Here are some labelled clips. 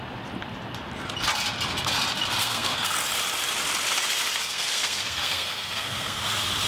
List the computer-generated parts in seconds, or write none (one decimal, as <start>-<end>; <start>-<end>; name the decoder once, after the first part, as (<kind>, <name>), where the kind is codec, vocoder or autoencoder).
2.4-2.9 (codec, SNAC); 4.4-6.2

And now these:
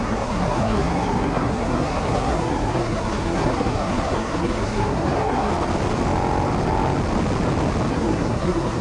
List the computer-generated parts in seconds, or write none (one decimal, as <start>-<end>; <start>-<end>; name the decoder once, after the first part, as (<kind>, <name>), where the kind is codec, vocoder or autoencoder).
0.0-5.5 (codec, SNAC); 7.9-8.8

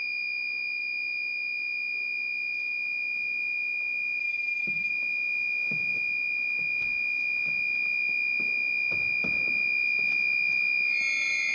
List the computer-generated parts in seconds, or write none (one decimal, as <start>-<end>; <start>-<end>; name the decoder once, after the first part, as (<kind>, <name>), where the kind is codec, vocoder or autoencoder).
4.2-4.9 (vocoder, HiFi-GAN)

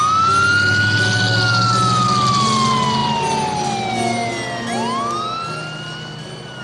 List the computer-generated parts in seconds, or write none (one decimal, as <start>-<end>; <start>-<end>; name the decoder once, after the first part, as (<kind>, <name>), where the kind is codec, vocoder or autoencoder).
none

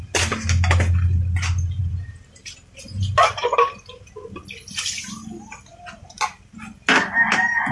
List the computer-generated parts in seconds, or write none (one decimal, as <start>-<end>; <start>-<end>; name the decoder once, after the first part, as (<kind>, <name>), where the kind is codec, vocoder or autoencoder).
1.8-4.4 (vocoder, BigVGAN v2); 5.7-6.5

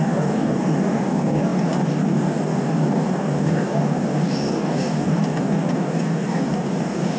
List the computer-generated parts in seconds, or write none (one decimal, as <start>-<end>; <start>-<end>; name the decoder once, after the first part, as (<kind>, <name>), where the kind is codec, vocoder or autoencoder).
0.0-7.2 (codec, DAC)

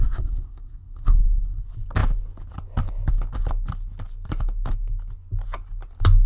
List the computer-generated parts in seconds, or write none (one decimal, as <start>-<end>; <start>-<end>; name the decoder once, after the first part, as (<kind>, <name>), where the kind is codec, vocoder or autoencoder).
0.0-1.6 (codec, SNAC)

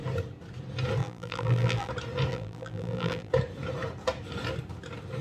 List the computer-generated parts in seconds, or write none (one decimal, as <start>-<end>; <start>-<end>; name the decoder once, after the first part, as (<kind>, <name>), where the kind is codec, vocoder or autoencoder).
1.0-1.9 (vocoder, BigVGAN v2); 2.3-3.3